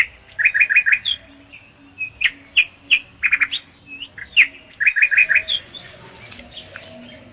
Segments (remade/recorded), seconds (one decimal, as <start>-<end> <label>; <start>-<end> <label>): 0.0-5.2 recorded; 5.2-6.2 remade; 6.2-7.3 recorded